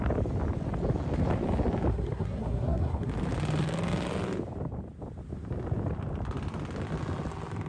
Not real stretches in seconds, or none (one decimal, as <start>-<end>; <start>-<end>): 1.9-3.1